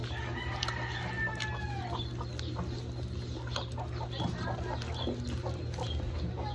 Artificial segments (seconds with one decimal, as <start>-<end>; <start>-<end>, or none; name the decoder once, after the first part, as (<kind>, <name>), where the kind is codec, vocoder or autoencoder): none